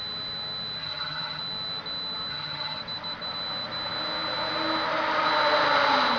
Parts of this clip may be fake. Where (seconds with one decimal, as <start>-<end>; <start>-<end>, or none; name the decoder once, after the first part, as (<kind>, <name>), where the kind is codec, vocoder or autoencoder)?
0.8-1.4 (vocoder, HiFi-GAN); 2.3-2.8